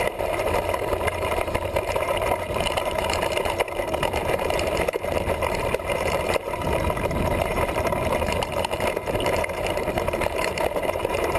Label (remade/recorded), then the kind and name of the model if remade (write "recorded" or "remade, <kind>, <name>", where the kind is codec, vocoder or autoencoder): remade, vocoder, BigVGAN v2